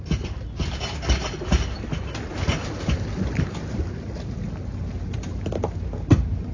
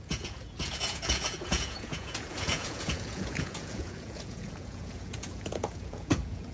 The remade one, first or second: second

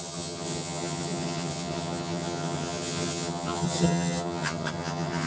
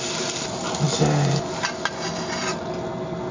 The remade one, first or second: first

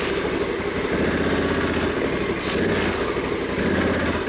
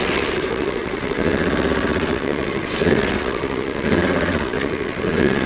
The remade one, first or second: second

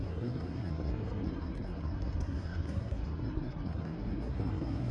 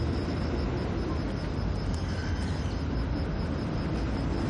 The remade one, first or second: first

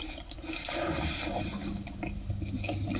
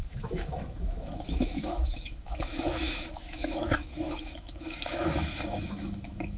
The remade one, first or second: second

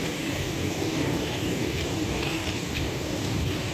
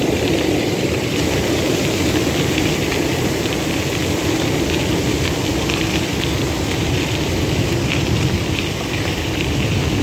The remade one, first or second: first